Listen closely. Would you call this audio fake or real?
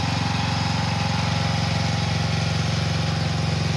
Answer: real